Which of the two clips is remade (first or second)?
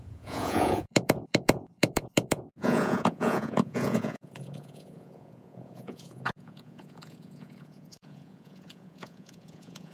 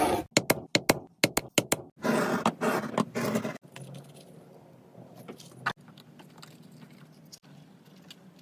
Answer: first